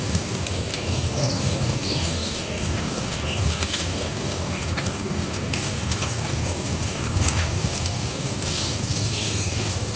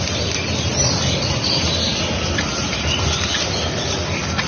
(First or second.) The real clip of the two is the second